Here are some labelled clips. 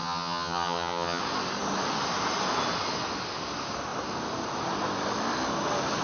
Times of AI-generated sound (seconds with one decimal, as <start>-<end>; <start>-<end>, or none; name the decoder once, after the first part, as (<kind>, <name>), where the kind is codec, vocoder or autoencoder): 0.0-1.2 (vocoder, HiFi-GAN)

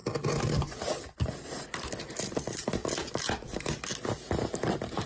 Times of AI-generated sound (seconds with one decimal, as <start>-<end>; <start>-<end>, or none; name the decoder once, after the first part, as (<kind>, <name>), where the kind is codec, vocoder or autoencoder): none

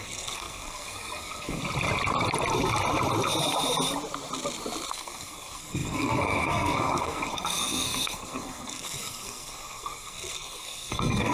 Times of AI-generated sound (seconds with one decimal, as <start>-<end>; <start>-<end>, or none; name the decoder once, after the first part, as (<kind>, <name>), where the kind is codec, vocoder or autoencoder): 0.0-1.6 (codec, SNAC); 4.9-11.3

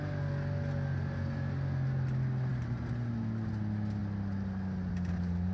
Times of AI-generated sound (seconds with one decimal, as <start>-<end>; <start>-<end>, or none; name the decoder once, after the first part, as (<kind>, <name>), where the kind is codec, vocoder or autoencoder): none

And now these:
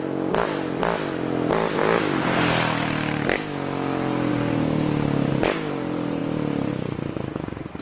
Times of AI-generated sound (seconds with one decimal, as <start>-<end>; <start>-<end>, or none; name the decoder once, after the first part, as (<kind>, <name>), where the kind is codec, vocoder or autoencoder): 1.8-2.4 (codec, DAC); 4.3-5.3

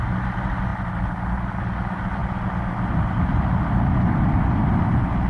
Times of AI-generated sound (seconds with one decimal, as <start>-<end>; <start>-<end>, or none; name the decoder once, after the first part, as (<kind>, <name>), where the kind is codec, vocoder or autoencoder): none